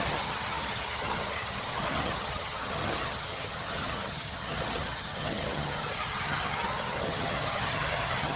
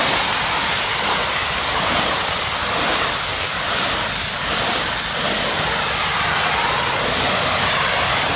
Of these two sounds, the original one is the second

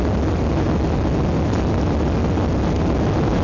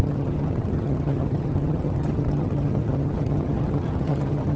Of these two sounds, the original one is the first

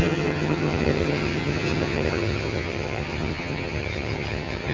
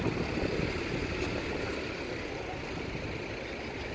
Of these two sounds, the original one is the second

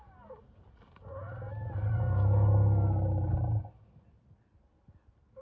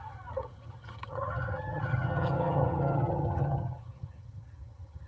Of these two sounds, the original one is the first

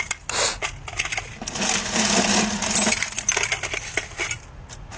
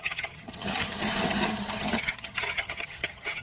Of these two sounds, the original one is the first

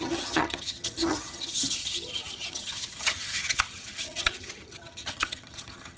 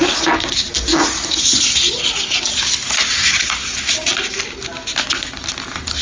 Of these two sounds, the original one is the second